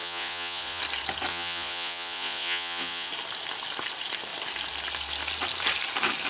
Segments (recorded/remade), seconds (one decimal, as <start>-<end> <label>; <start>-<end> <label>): 0.0-0.8 remade; 0.8-1.3 recorded; 1.3-3.1 remade; 3.1-6.3 recorded